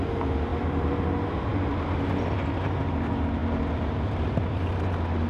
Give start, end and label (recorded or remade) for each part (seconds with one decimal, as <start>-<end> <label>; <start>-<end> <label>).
0.0-0.5 recorded; 0.5-1.1 remade; 1.1-3.4 recorded; 3.4-4.7 remade; 4.7-5.3 recorded